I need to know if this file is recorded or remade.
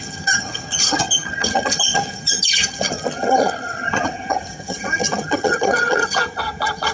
remade